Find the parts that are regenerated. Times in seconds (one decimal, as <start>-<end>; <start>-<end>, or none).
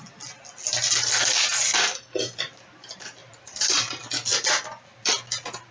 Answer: 3.2-3.8